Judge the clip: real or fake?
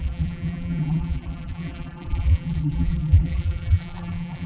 fake